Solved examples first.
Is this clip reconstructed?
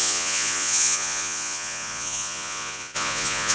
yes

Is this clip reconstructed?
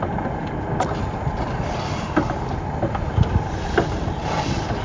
no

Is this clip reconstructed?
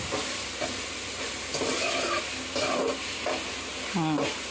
no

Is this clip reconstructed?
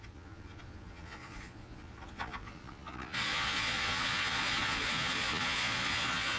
yes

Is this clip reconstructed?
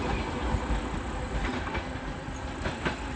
no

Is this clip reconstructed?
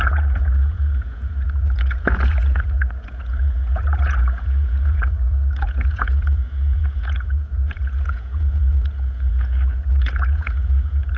yes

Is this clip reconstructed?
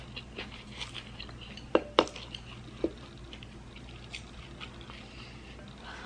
no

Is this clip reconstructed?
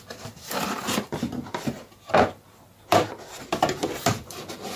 no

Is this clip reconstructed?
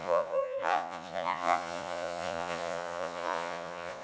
yes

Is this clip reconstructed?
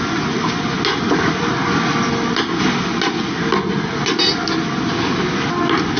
no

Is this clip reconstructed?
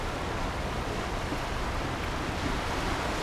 no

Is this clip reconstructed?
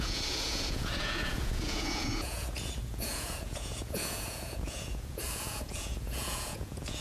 yes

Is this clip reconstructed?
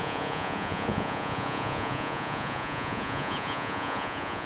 yes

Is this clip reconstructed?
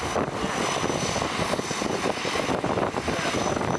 no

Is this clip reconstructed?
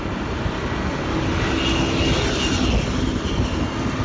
no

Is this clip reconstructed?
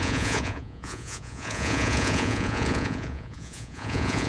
yes